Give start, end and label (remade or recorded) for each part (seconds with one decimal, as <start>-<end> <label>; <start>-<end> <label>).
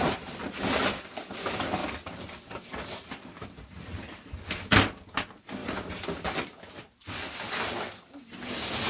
0.0-8.9 recorded